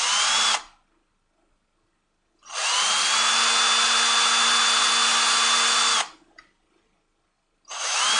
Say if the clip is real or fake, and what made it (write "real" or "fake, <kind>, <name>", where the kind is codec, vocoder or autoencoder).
real